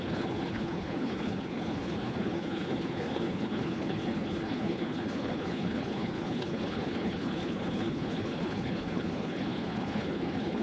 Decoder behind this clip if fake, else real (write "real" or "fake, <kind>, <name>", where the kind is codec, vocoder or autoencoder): fake, codec, HILCodec